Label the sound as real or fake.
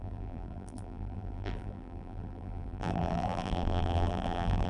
fake